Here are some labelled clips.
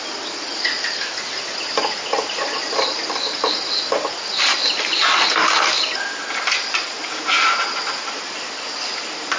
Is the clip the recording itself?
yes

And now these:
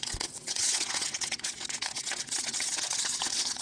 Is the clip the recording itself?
no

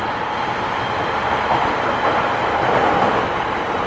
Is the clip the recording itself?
yes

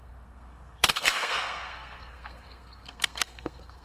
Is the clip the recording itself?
no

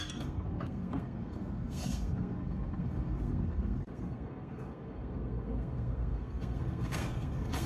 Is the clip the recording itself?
no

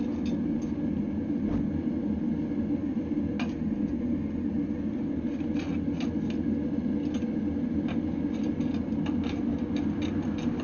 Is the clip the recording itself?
yes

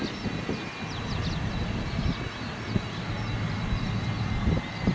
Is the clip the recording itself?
yes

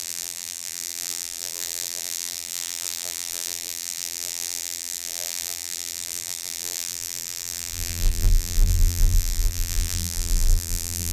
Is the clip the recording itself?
no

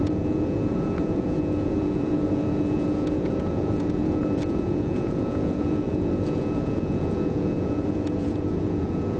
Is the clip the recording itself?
no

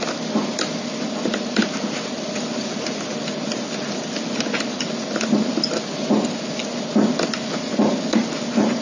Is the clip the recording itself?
yes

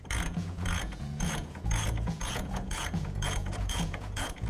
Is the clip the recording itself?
no